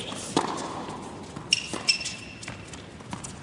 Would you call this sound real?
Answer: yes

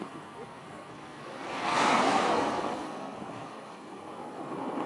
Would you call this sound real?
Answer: no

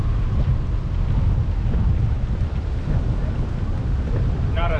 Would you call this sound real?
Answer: yes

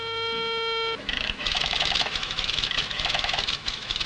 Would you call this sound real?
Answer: no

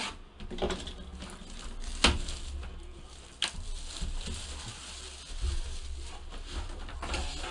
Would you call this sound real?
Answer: yes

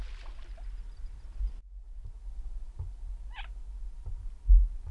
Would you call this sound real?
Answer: yes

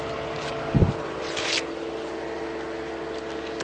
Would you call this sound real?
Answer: yes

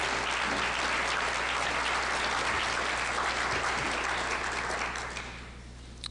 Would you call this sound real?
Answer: yes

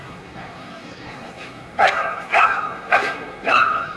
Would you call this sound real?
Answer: no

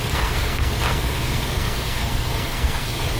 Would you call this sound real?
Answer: no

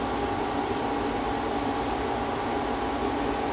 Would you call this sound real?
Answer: yes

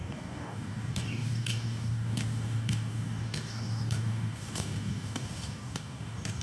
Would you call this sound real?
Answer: no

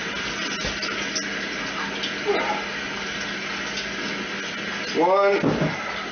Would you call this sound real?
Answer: yes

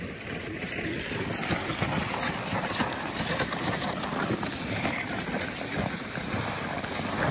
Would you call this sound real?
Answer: no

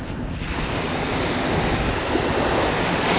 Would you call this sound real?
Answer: yes